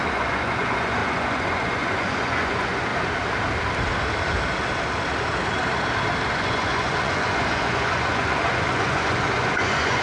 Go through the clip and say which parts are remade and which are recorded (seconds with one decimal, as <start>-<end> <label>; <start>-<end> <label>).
0.0-2.9 remade; 2.9-6.3 recorded; 6.3-10.0 remade